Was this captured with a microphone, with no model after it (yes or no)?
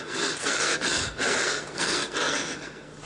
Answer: no